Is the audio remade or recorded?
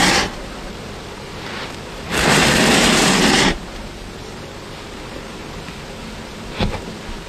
remade